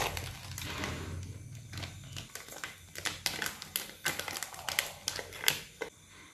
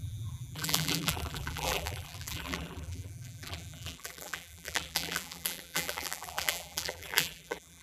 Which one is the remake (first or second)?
second